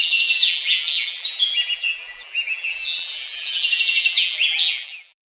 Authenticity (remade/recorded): remade